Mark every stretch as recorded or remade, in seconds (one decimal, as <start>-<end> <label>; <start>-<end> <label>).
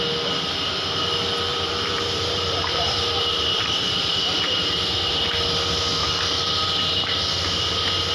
0.0-1.5 recorded; 1.5-5.2 remade; 5.2-8.1 recorded